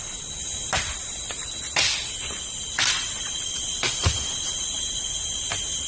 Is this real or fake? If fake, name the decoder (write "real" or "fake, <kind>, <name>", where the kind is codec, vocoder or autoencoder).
real